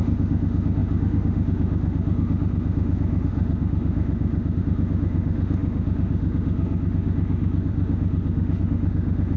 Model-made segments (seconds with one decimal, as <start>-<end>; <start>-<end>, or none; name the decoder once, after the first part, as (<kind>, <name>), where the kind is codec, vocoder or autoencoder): 0.0-9.4 (autoencoder, DAC-VAE)